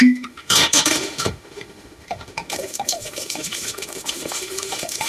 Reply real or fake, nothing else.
fake